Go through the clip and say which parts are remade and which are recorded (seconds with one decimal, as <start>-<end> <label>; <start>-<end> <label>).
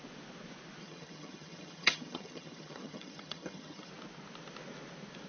0.0-0.8 recorded; 0.8-3.9 remade; 3.9-5.3 recorded